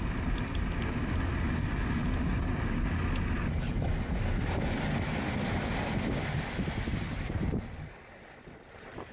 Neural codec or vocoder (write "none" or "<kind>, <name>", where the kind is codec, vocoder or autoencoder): none